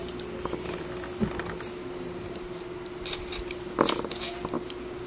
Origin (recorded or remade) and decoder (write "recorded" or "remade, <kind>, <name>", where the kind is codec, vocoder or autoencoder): recorded